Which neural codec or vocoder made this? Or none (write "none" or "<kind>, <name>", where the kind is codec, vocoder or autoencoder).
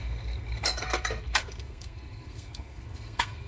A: codec, SNAC